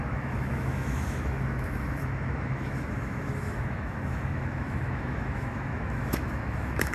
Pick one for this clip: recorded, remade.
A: remade